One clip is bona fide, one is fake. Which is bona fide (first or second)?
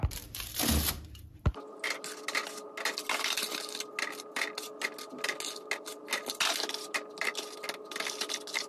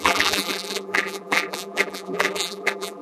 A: first